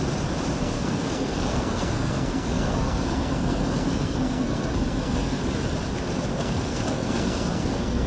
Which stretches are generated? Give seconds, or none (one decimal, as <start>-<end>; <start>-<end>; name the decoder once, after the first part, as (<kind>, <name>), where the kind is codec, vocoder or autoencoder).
0.6-5.4 (codec, SNAC); 6.3-8.1